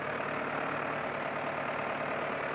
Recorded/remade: recorded